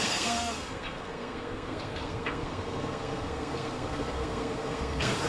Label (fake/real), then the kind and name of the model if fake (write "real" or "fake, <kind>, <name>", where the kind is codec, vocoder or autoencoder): fake, codec, SNAC